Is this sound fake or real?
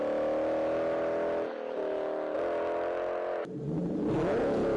real